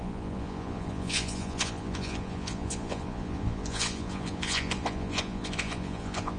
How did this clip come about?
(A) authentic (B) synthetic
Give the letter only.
B